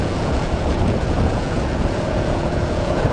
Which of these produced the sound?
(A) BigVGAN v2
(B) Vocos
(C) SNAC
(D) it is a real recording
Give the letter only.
B